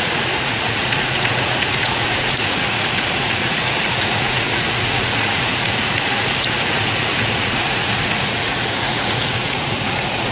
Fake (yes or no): yes